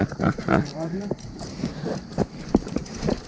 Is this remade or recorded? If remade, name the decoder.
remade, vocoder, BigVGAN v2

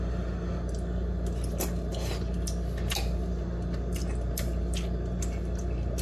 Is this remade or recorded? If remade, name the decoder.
recorded